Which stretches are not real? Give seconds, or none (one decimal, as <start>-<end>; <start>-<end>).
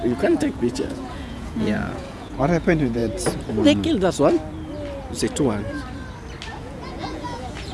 0.0-3.0; 6.6-7.7